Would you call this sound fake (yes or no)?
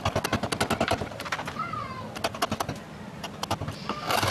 no